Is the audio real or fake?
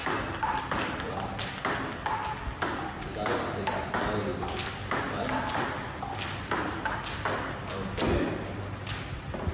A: real